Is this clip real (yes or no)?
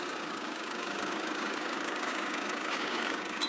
no